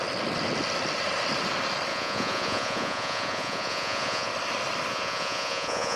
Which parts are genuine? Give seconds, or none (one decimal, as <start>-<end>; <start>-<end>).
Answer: 0.0-1.9; 4.3-4.9